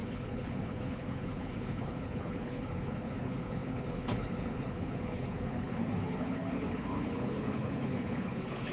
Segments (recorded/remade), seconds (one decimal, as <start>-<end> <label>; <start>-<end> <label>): 0.0-8.7 remade